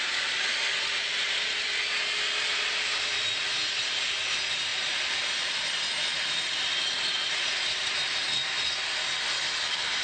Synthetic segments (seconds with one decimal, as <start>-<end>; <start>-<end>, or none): none